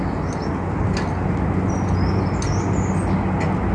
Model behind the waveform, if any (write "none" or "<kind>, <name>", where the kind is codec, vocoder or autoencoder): none